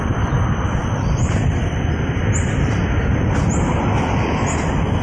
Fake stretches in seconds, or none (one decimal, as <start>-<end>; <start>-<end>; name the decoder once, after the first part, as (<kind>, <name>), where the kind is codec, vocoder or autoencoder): none